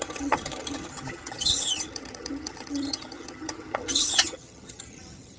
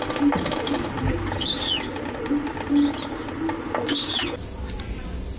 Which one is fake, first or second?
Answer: first